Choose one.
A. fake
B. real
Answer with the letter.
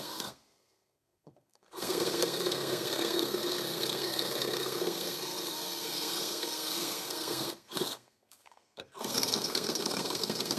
A